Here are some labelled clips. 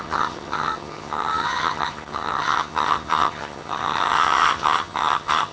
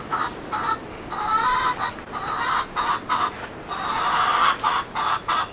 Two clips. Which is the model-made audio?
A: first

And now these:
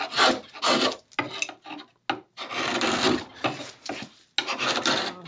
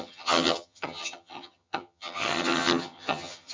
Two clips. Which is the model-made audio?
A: second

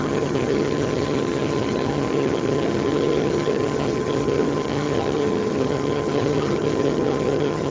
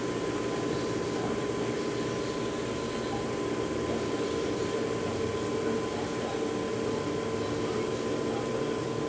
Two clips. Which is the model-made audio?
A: first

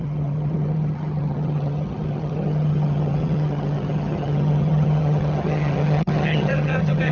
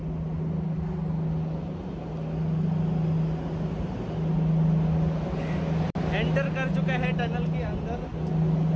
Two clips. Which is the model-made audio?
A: first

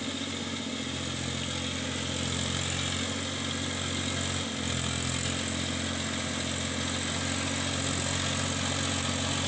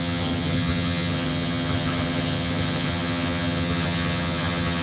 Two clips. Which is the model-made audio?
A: second